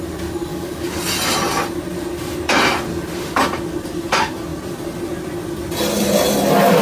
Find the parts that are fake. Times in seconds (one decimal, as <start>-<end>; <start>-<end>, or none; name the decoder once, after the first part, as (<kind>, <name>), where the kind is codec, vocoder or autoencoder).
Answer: 0.5-1.0 (codec, DAC)